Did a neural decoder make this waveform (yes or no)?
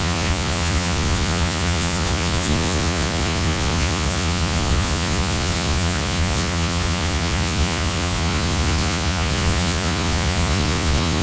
yes